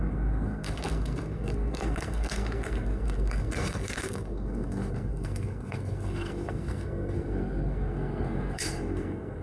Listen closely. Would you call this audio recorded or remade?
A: remade